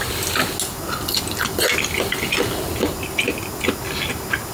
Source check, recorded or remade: recorded